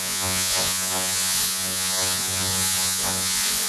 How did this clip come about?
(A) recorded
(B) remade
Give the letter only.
B